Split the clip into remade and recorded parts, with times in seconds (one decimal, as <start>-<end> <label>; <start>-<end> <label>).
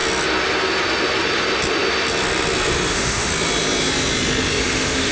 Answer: 0.0-2.9 recorded; 2.9-3.3 remade; 3.3-4.6 recorded; 4.6-5.1 remade